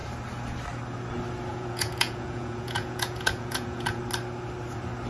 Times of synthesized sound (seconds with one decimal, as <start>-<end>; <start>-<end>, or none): 1.5-4.0